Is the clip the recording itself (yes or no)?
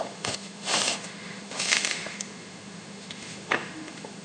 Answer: no